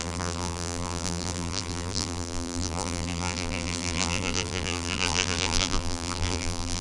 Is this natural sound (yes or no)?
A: no